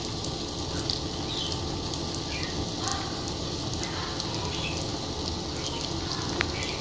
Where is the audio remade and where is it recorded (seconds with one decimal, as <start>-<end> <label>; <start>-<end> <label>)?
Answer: 0.0-2.9 recorded; 2.9-4.1 remade; 4.1-6.8 recorded